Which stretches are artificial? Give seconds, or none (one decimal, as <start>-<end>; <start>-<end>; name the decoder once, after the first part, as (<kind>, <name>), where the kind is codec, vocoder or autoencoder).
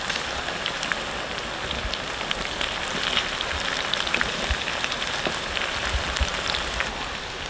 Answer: 1.8-3.9 (vocoder, BigVGAN v2)